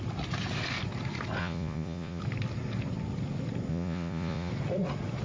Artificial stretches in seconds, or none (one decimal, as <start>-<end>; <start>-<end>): 1.4-2.2; 3.7-4.5